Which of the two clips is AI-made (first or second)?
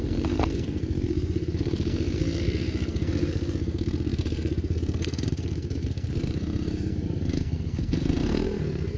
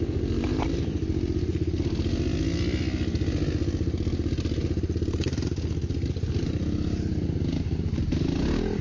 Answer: first